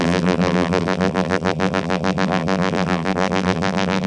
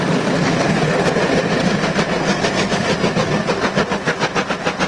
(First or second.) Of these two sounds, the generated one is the first